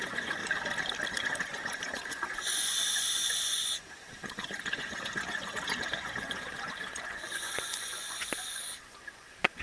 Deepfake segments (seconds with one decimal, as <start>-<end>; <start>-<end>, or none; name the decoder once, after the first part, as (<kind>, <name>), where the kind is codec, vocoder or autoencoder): 0.0-0.4 (vocoder, Vocos); 1.1-9.6